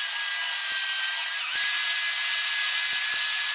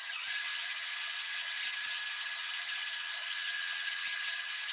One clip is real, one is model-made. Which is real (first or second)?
first